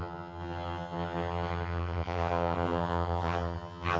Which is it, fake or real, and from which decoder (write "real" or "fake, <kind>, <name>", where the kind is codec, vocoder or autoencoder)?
fake, vocoder, HiFi-GAN